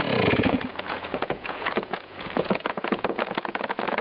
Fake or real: fake